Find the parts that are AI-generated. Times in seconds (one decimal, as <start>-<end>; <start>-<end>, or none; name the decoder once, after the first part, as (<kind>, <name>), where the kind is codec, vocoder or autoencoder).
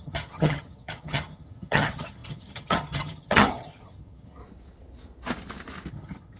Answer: 0.0-4.4 (vocoder, HiFi-GAN); 5.9-6.4